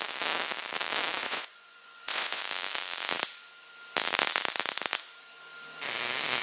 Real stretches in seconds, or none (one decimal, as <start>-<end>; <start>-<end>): 0.0-1.2; 2.4-6.4